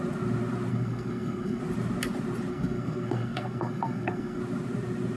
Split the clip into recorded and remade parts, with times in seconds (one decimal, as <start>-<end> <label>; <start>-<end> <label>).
0.0-0.7 recorded; 0.7-1.6 remade; 1.6-2.5 recorded; 2.5-4.4 remade; 4.4-5.2 recorded